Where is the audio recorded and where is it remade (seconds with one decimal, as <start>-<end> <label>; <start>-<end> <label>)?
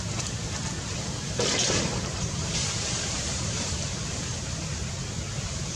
0.0-0.9 recorded; 0.9-4.4 remade; 4.4-5.8 recorded